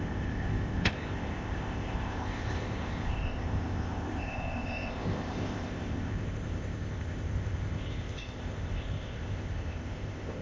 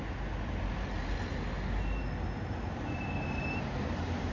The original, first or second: second